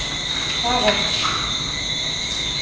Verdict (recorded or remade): recorded